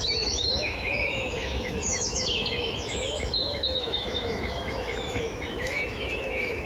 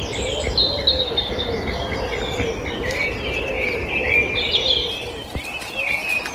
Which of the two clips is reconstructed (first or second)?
first